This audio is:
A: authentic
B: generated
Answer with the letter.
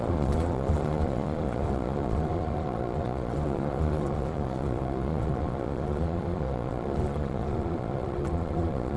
B